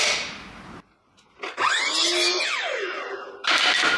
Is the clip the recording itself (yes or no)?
yes